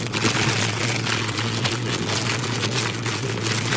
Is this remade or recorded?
remade